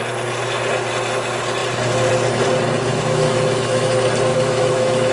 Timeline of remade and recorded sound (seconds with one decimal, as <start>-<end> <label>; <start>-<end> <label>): 0.0-2.9 recorded; 2.9-3.9 remade; 3.9-4.3 recorded; 4.3-5.1 remade